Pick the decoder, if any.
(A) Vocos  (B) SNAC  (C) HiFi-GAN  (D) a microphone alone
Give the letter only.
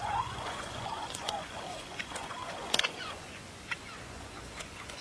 A